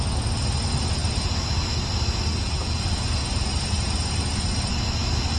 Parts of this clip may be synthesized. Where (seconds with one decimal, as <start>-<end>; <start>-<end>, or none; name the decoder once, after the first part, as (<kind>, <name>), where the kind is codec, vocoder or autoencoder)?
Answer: 2.3-2.8 (vocoder, Vocos)